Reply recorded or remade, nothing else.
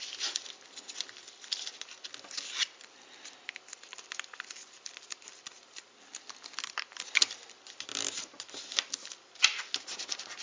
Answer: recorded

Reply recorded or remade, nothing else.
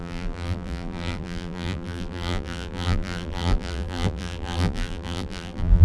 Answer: remade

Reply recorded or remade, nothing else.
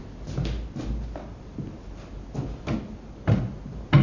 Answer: recorded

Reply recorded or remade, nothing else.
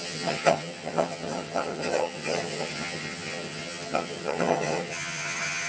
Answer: remade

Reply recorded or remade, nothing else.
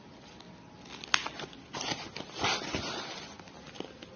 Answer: recorded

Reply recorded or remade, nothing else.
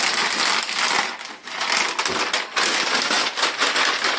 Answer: recorded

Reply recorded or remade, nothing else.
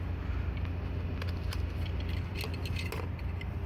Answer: recorded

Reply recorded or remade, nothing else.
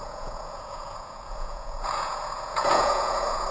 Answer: remade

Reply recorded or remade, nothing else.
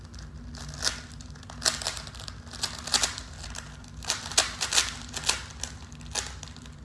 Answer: recorded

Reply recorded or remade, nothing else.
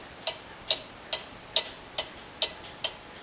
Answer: recorded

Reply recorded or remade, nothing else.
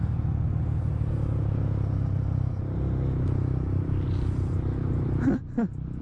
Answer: recorded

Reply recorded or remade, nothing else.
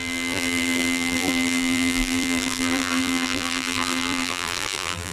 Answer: remade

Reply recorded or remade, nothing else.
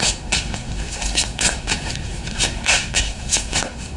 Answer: remade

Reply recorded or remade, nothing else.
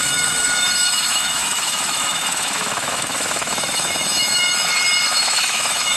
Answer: remade